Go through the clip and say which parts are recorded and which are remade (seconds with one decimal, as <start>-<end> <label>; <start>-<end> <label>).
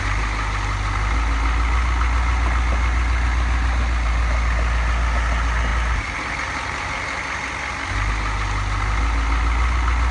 0.0-10.1 recorded